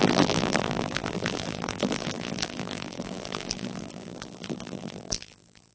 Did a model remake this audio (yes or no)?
yes